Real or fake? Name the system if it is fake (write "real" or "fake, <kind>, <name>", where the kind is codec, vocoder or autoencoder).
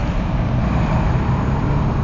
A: real